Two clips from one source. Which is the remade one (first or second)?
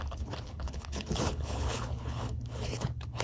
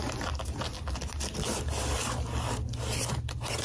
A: first